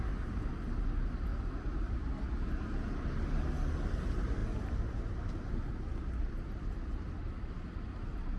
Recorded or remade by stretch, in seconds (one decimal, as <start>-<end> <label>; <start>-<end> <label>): 0.0-8.4 recorded